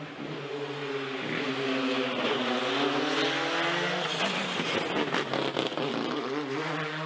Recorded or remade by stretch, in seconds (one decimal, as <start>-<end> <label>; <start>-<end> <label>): 0.0-7.1 recorded